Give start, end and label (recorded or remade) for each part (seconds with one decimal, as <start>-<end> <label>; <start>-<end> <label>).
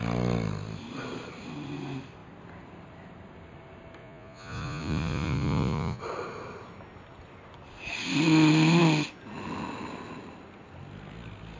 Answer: 0.0-4.0 recorded; 4.0-6.0 remade; 6.0-11.6 recorded